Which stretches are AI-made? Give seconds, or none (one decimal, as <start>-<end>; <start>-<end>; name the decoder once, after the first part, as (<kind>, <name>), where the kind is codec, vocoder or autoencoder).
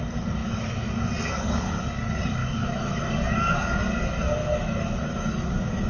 0.4-0.9 (autoencoder, DAC-VAE); 2.4-3.0; 4.4-5.9